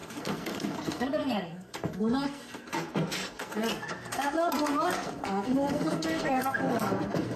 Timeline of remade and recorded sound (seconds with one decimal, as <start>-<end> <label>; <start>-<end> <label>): 0.0-7.4 remade